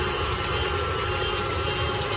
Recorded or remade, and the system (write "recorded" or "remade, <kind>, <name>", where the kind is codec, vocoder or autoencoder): recorded